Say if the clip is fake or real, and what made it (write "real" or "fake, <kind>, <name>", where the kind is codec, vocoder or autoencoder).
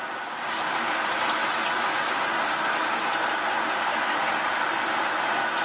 real